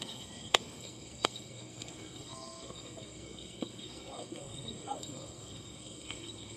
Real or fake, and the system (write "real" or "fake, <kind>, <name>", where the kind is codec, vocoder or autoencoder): fake, codec, SNAC